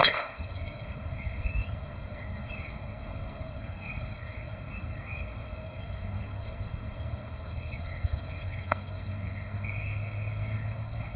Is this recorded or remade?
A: remade